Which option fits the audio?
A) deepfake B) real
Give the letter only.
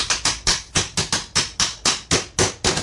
B